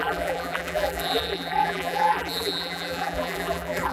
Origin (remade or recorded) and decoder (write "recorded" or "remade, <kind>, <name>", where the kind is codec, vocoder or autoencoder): remade, vocoder, BigVGAN v2